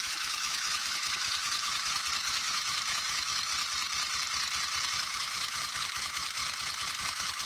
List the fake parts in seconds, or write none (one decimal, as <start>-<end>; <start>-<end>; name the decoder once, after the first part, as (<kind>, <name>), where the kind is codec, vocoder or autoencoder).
0.0-3.5 (autoencoder, DAC-VAE); 4.9-6.4; 7.0-7.5